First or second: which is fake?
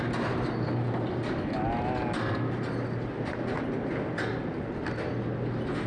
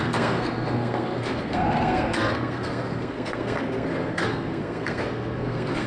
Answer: second